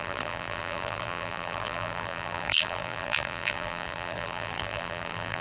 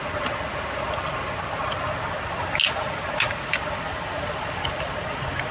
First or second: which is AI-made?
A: first